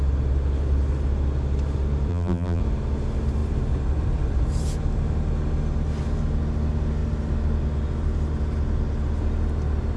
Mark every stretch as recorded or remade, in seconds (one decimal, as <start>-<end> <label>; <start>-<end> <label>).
0.0-2.1 recorded; 2.1-2.6 remade; 2.6-10.0 recorded